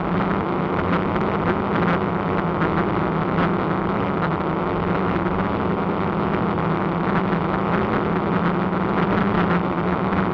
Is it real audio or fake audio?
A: real